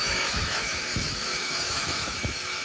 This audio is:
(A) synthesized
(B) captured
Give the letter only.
A